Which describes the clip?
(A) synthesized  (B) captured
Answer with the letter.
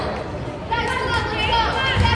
B